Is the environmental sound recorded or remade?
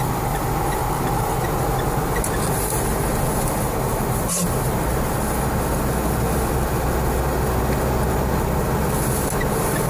recorded